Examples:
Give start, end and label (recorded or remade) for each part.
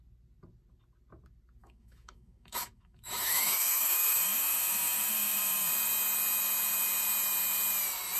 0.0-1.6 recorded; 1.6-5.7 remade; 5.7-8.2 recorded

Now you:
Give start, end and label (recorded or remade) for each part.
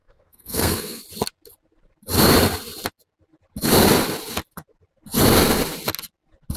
0.0-1.0 remade; 1.0-6.6 recorded